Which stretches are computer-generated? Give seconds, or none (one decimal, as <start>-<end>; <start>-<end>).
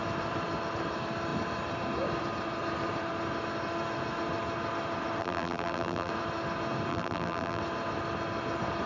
5.2-6.1; 6.9-7.6